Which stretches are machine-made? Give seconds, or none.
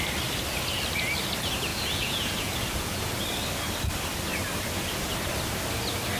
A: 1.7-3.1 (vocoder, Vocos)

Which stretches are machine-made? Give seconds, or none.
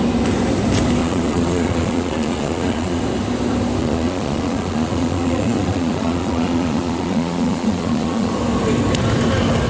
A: 1.0-3.0 (vocoder, Vocos); 3.8-8.3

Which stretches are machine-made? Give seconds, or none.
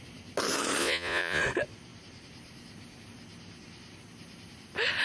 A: 0.8-1.4 (vocoder, Vocos)